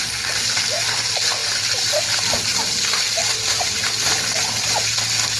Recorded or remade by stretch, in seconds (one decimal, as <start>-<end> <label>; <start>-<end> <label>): 0.0-5.4 recorded